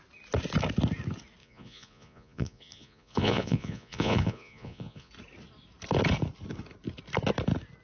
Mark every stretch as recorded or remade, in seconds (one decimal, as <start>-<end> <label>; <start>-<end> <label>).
0.0-1.4 recorded; 1.4-5.1 remade; 5.1-7.8 recorded